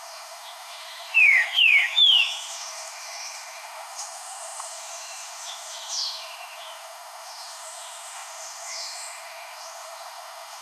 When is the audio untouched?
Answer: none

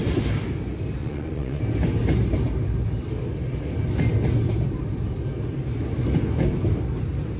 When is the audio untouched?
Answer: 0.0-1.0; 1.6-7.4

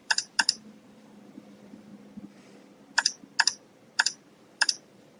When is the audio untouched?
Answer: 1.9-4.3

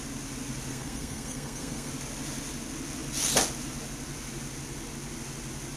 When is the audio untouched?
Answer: 0.0-0.7; 1.9-5.8

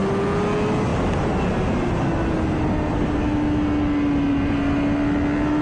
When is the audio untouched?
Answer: 0.0-5.6

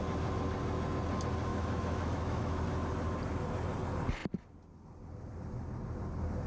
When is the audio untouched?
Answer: 0.0-1.5; 2.6-6.5

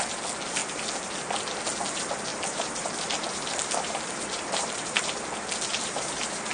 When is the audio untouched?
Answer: 0.0-2.3; 5.0-5.7